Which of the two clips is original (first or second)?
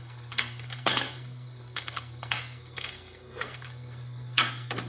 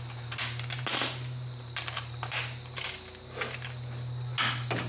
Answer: second